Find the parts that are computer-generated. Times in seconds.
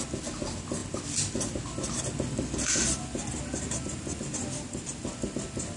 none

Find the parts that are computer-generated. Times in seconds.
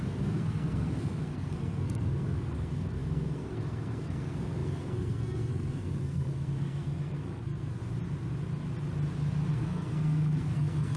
0.0-7.8 (codec, SNAC); 9.5-11.0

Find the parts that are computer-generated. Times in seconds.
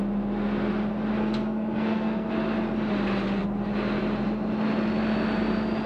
1.2-2.3 (codec, SNAC)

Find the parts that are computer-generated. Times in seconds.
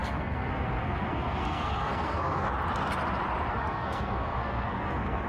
0.0-2.5 (codec, SNAC); 3.5-5.3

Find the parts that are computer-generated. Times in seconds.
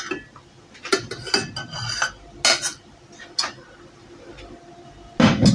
none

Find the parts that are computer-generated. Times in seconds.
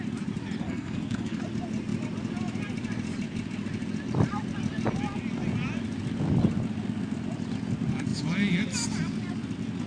0.6-1.4 (codec, SNAC)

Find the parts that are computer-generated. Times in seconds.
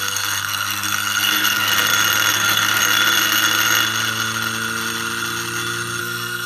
0.0-1.7 (codec, SNAC); 2.3-2.8; 6.0-6.5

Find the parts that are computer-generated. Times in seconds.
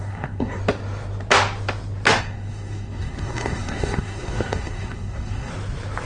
0.0-0.6 (codec, SNAC); 2.2-5.5